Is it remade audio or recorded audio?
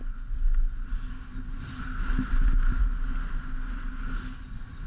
recorded